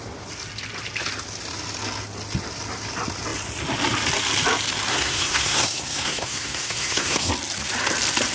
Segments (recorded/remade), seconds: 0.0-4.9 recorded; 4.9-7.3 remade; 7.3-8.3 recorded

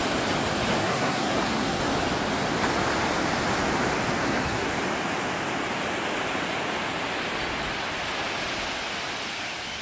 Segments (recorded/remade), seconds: 0.0-0.8 recorded; 0.8-1.8 remade; 1.8-4.2 recorded; 4.2-4.7 remade; 4.7-9.8 recorded

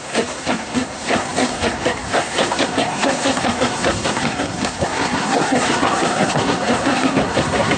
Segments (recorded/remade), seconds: 0.0-7.8 remade

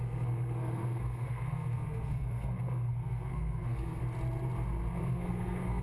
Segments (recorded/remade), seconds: 0.0-4.0 remade; 4.0-5.0 recorded; 5.0-5.8 remade